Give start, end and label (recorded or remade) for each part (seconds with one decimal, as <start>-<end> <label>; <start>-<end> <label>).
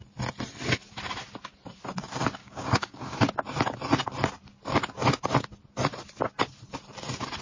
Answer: 0.0-2.4 recorded; 2.4-3.2 remade; 3.2-7.4 recorded